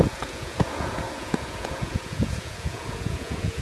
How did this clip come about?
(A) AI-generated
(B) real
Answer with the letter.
A